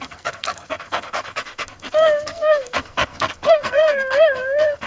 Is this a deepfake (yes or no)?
yes